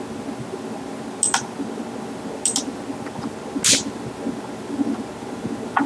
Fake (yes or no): no